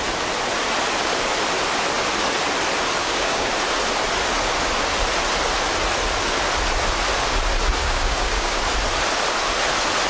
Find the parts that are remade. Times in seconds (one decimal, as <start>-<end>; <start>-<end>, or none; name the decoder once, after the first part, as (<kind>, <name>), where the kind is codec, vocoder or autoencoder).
3.0-3.5 (codec, DAC); 7.8-8.6

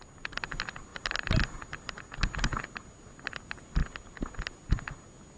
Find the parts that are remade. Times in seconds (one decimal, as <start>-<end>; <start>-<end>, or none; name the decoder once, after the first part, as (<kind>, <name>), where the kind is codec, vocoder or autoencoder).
none

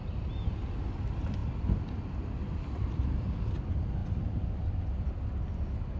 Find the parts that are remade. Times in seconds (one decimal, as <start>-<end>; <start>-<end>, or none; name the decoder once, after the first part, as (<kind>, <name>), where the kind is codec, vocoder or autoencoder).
none